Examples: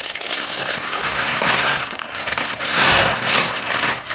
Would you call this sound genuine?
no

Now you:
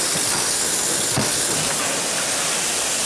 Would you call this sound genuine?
yes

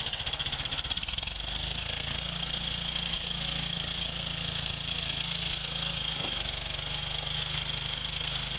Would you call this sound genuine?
no